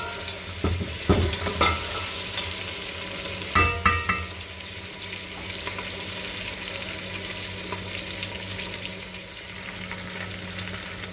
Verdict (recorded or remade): recorded